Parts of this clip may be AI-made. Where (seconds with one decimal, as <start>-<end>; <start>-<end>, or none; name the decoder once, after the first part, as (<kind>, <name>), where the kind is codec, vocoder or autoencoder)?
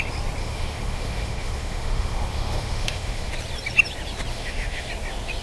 0.4-3.3 (autoencoder, DAC-VAE); 4.3-4.9